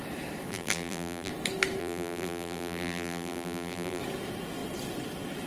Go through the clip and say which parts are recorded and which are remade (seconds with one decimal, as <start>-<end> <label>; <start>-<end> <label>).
0.0-0.5 recorded; 0.5-1.3 remade; 1.3-1.8 recorded; 1.8-4.0 remade; 4.0-5.5 recorded

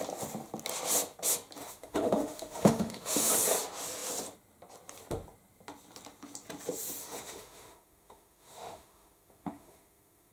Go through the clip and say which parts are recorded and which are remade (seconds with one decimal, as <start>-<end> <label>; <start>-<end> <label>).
0.0-1.6 recorded; 1.6-3.3 remade; 3.3-7.0 recorded; 7.0-10.3 remade

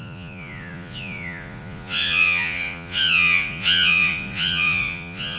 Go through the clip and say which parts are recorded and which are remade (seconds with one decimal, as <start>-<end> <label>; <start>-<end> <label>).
0.0-5.4 remade